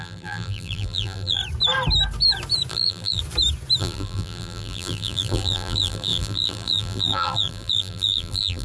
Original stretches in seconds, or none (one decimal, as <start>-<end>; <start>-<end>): 1.4-2.7; 3.2-3.8